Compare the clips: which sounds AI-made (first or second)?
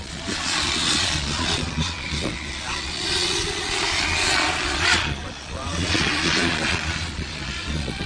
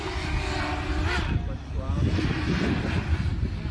first